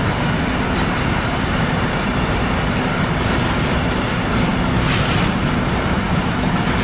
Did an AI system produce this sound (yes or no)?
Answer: yes